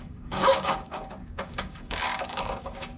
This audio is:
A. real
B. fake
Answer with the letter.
B